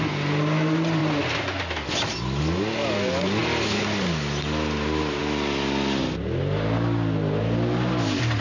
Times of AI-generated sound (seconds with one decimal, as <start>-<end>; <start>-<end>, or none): none